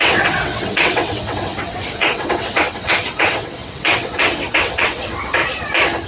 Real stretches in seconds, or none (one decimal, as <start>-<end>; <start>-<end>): 5.4-6.1